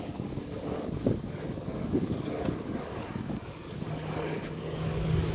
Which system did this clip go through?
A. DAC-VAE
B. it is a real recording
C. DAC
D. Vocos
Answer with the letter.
C